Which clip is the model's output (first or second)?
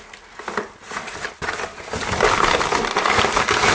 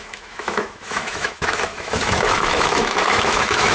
second